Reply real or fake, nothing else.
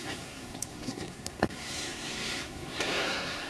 fake